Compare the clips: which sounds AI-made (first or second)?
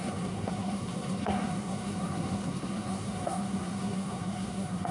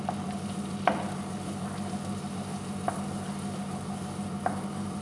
first